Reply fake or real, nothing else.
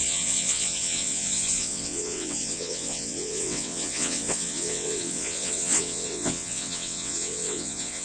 fake